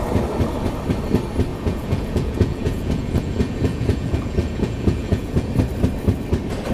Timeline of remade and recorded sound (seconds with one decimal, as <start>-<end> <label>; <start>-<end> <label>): 0.0-1.5 recorded; 1.5-5.5 remade; 5.5-6.7 recorded